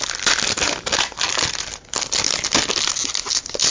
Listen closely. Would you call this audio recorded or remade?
recorded